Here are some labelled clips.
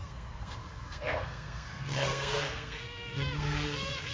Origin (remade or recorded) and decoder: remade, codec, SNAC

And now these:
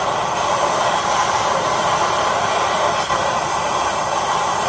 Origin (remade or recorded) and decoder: remade, vocoder, BigVGAN v2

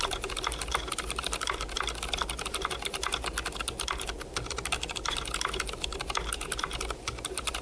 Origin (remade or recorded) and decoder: recorded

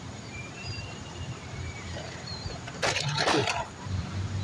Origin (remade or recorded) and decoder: remade, vocoder, BigVGAN v2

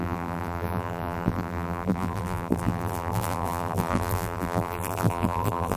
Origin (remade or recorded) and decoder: remade, vocoder, BigVGAN v2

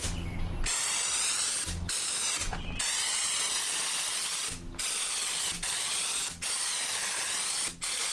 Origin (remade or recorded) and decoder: recorded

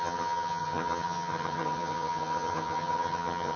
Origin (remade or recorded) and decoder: remade, vocoder, HiFi-GAN